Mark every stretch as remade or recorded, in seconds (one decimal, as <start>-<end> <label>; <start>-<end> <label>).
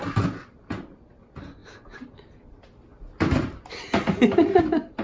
0.0-5.0 recorded